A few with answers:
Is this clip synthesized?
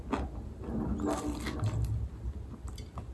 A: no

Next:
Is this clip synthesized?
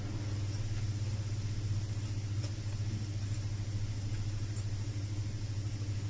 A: no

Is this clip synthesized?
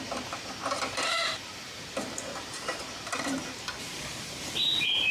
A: yes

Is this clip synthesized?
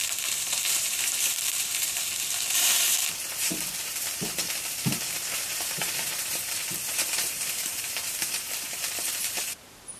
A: yes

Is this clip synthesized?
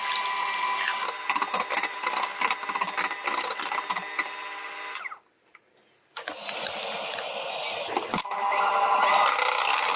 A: no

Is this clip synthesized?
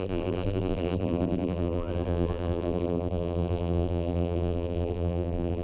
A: yes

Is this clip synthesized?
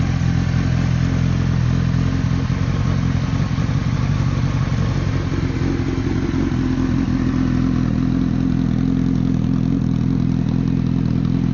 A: no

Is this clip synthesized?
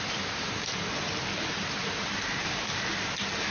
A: yes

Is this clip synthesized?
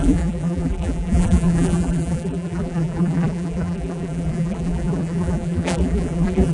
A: yes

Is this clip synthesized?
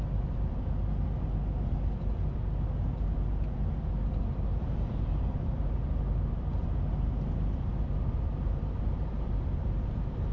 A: yes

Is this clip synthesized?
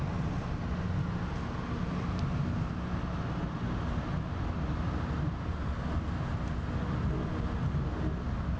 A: no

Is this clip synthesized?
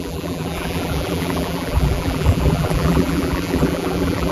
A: yes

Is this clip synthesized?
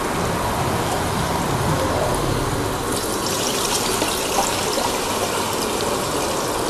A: yes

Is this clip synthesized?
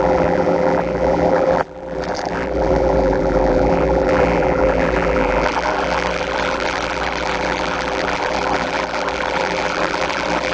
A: yes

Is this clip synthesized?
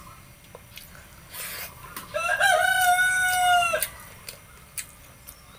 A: no